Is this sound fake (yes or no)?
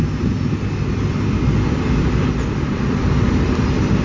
no